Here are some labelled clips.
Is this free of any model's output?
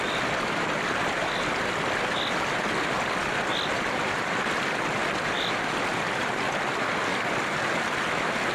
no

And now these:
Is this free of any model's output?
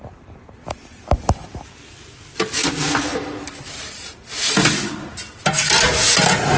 yes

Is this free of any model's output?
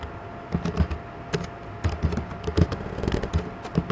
yes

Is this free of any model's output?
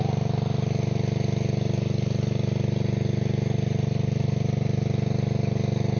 yes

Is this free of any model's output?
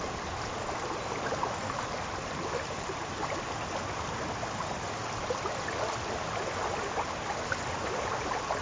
yes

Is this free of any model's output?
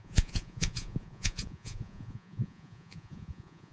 no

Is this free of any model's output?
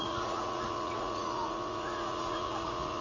no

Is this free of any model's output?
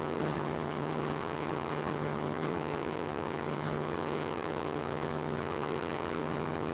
no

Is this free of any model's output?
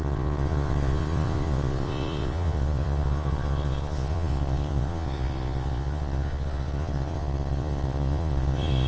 no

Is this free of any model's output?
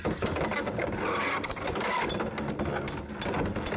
yes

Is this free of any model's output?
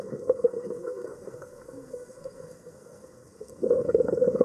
no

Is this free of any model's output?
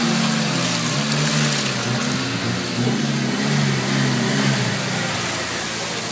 yes